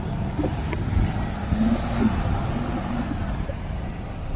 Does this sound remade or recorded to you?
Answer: recorded